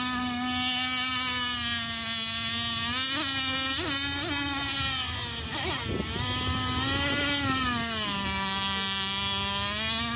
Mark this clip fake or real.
real